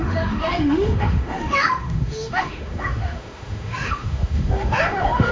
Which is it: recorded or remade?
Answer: remade